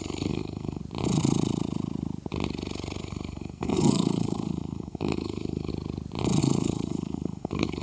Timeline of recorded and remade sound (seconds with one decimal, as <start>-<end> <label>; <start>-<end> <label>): 0.0-0.8 remade; 0.8-3.0 recorded; 3.0-5.7 remade; 5.7-6.4 recorded; 6.4-7.8 remade